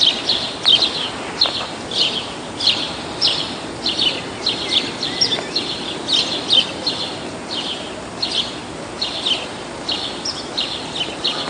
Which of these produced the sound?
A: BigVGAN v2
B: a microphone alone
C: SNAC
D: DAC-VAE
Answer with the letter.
B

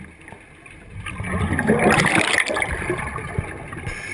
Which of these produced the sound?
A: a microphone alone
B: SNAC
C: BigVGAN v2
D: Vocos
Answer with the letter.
A